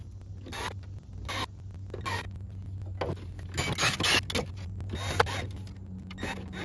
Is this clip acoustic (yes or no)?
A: yes